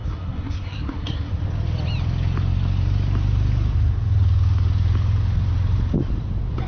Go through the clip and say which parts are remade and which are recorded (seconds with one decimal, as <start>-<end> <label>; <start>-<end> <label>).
0.0-1.3 remade; 1.3-6.7 recorded